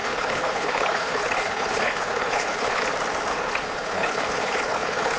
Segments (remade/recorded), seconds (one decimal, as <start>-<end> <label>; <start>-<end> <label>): 0.0-2.8 remade; 2.8-3.3 recorded; 3.3-5.2 remade